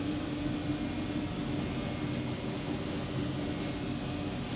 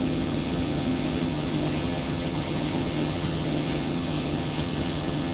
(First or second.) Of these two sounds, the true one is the first